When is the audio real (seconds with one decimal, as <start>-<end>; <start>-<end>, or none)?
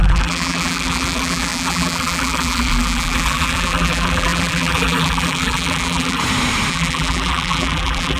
6.2-6.7